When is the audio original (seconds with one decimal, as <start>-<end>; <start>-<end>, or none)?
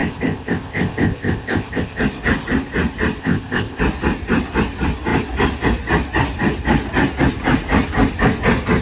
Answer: 2.0-3.2; 3.8-8.8